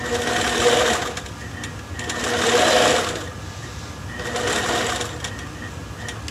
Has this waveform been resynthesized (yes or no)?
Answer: no